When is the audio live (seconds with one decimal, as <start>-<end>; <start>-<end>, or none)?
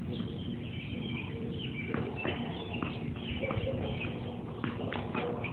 0.0-0.9; 3.9-5.5